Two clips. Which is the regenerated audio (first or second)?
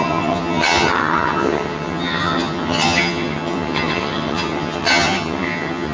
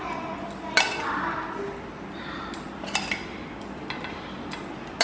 first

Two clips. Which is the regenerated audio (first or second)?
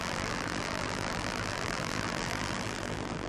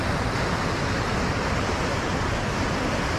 first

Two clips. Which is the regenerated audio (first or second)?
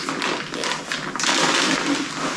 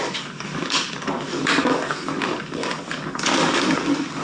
second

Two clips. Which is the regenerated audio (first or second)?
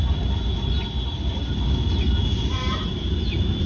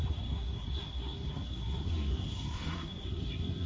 second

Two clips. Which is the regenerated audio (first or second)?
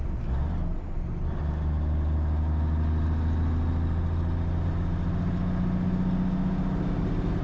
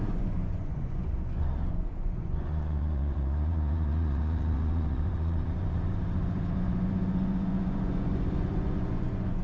second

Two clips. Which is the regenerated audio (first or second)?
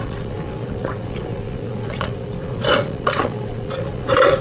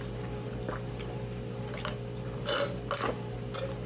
first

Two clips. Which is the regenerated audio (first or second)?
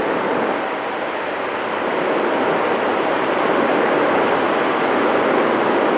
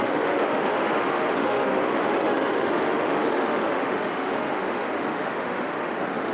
second